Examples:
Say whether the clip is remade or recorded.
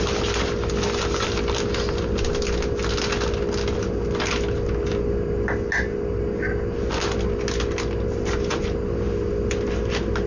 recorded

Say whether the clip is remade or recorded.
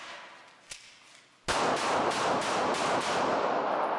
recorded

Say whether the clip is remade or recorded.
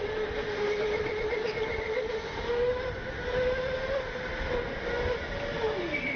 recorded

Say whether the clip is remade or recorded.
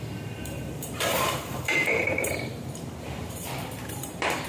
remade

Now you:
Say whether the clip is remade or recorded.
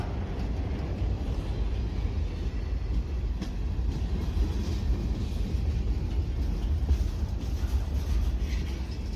recorded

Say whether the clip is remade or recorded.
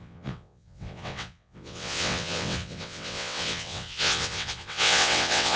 remade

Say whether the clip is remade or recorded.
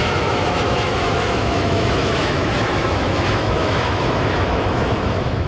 remade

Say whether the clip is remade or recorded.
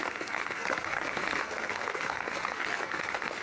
remade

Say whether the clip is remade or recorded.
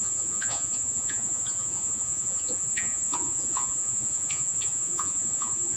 remade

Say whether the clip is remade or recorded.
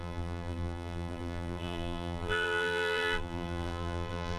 remade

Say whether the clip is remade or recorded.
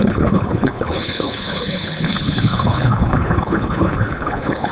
remade